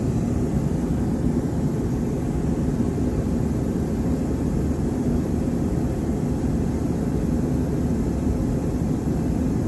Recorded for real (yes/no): yes